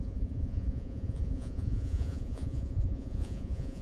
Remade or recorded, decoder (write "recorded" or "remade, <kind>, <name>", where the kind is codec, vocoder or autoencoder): remade, vocoder, Vocos